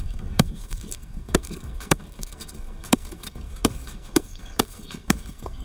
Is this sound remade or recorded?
remade